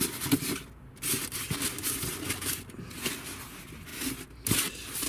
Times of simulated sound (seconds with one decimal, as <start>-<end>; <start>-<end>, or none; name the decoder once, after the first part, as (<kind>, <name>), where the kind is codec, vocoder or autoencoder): none